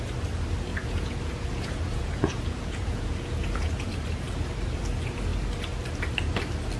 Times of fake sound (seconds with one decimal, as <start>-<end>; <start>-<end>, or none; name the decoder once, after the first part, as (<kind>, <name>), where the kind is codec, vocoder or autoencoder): 0.7-3.9 (vocoder, Vocos)